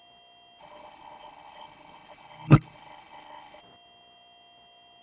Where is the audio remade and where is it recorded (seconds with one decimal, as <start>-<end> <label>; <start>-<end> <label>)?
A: 0.0-0.6 recorded; 0.6-3.6 remade; 3.6-5.0 recorded